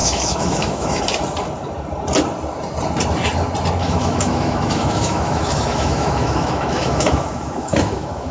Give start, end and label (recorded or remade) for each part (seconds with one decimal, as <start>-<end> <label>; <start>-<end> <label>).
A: 0.0-1.0 remade; 1.0-3.8 recorded; 3.8-8.3 remade